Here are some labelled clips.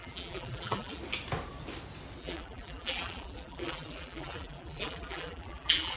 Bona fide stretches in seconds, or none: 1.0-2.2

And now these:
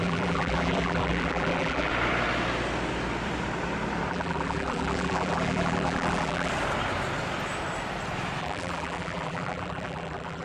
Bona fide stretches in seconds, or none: 1.9-4.1; 6.5-8.4

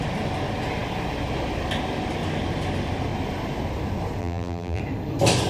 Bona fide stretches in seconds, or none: 0.0-4.2; 4.8-5.5

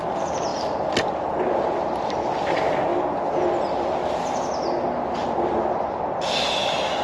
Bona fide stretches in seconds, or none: 2.9-3.6; 4.0-5.8

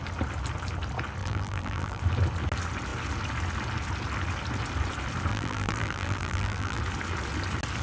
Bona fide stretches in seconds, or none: 0.0-1.2; 2.0-5.3; 6.8-7.8

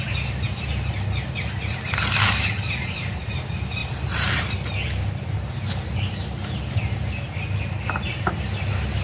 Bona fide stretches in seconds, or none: 0.0-3.8; 5.7-9.0

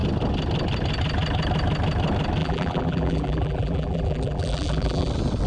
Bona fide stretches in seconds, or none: 0.0-2.4; 5.1-5.5

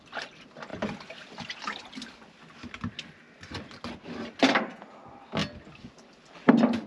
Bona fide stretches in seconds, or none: 0.0-5.4; 6.5-6.9